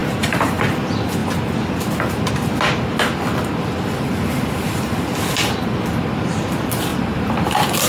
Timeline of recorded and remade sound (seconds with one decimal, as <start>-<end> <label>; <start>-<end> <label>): 0.0-0.5 remade; 0.5-6.9 recorded; 6.9-7.9 remade